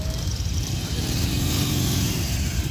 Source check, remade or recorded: remade